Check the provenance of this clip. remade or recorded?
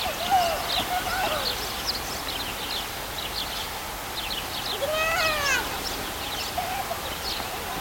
recorded